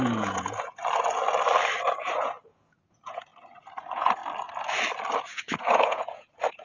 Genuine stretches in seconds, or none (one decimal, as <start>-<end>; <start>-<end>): 0.8-2.1; 3.3-3.8; 4.2-5.2